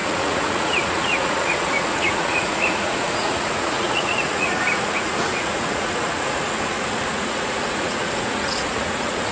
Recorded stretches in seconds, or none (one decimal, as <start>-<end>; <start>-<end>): none